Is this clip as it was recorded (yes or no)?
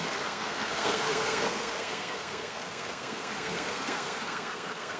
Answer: no